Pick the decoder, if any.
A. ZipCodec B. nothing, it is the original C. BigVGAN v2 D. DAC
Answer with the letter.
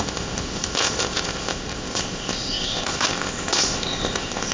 A